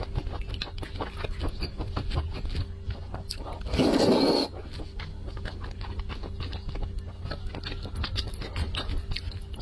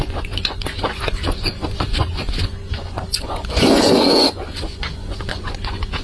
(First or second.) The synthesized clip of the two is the second